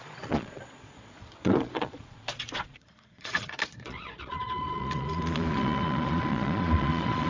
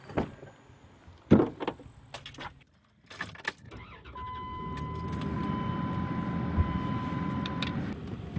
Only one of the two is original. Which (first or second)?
second